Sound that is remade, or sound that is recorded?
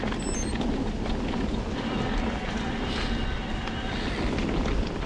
recorded